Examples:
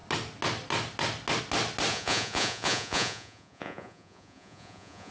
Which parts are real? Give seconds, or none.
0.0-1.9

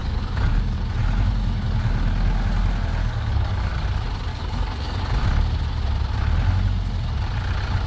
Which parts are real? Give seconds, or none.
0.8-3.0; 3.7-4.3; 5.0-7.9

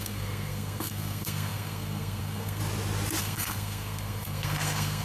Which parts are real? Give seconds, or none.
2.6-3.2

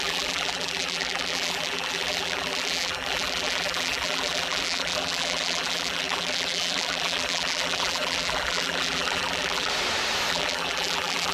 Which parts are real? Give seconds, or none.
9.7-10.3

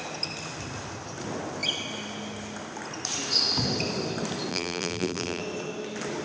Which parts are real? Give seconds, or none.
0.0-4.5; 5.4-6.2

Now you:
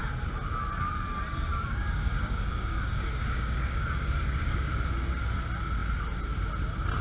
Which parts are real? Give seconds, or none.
0.0-1.5; 4.7-7.0